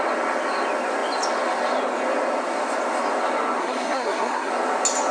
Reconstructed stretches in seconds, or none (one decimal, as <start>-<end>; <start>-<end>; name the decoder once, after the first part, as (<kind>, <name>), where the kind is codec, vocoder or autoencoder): 3.6-4.5 (codec, SNAC)